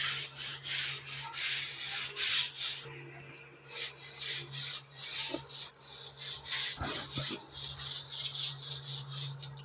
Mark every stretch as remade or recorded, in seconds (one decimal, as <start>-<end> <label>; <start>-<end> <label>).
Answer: 0.0-9.6 recorded